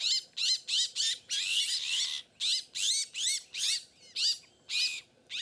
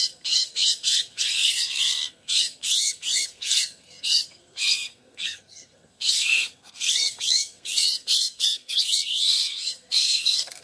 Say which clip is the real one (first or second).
first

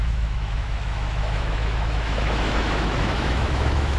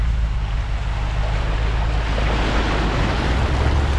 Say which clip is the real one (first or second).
second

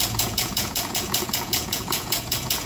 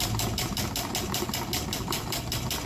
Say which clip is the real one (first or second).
second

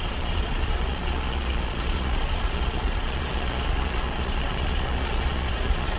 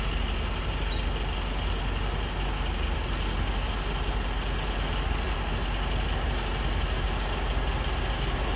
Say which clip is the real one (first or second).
second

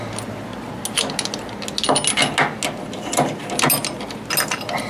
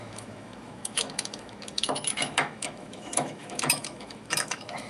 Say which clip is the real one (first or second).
first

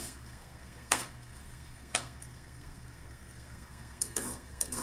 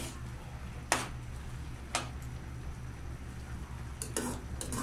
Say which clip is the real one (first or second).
second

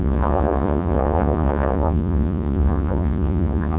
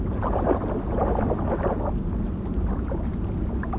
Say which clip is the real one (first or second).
second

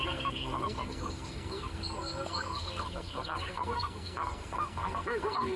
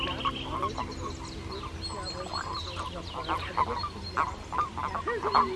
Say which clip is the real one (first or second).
second